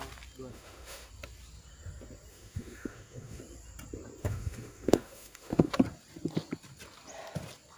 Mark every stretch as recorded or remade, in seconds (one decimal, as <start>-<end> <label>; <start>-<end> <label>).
0.0-0.5 recorded; 0.5-1.1 remade; 1.1-2.3 recorded; 2.3-3.4 remade; 3.4-4.2 recorded; 4.2-5.8 remade; 5.8-7.8 recorded